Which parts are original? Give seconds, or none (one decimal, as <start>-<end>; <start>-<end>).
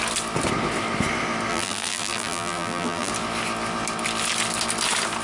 0.0-1.5; 3.1-5.2